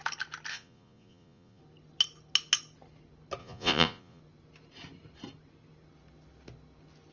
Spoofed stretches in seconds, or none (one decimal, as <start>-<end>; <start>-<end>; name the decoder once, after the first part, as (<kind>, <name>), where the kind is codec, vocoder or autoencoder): 0.5-1.6 (vocoder, Vocos); 3.4-4.2